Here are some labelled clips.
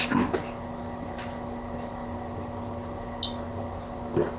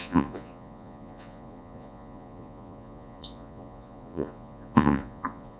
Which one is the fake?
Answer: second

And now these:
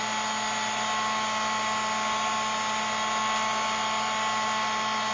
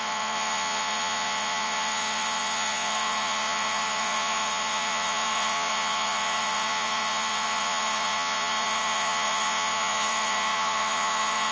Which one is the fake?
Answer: second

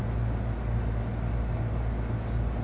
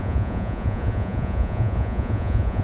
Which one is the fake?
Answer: second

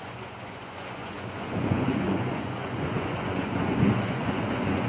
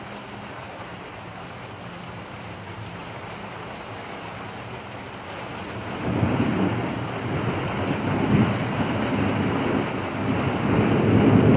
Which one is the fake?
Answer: first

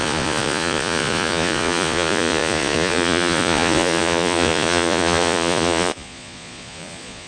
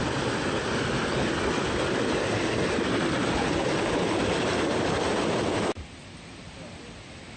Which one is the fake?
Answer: first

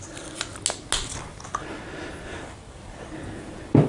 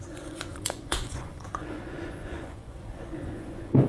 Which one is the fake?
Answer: second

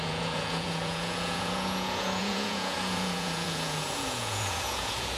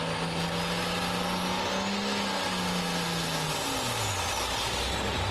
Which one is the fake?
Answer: first